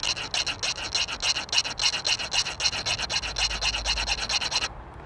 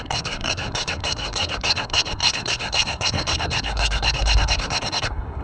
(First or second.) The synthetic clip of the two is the second